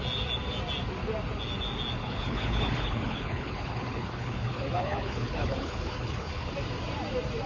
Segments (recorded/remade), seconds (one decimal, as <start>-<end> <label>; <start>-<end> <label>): 0.0-2.0 recorded; 2.0-6.5 remade; 6.5-7.5 recorded